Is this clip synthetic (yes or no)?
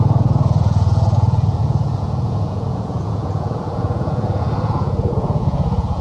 yes